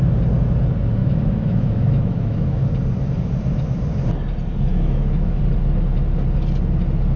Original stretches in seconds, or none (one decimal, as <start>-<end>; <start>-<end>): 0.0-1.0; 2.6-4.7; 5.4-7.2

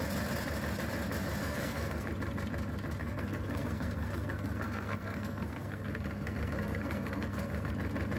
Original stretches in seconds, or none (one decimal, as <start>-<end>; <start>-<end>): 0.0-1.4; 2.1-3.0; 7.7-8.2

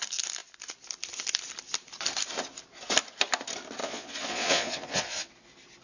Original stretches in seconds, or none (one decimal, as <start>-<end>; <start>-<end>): 0.0-3.8; 5.3-5.8

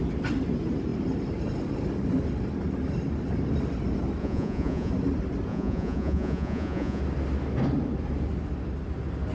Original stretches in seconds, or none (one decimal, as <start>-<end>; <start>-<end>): 0.0-4.2; 4.9-5.5; 7.0-9.3

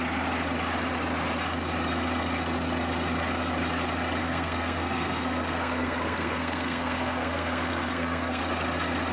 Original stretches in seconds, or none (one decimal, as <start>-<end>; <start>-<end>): 0.0-4.2; 8.4-9.1

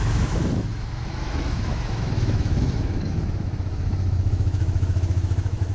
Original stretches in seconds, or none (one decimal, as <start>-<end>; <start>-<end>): none

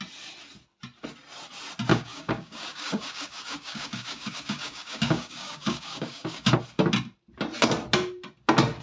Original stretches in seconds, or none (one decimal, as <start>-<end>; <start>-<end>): 0.0-1.9; 6.5-8.8

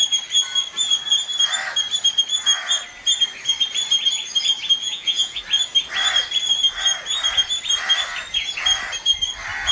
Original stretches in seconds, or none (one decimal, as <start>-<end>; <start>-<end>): 0.0-4.8; 5.4-9.7